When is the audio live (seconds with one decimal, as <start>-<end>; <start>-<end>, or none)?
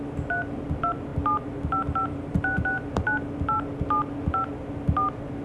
0.0-5.4